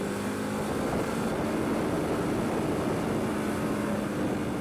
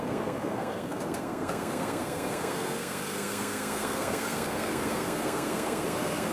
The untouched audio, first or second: first